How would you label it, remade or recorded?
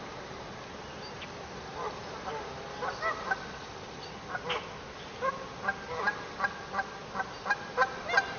recorded